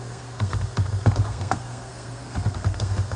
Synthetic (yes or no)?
yes